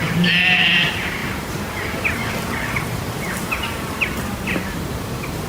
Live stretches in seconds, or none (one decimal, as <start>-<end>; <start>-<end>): none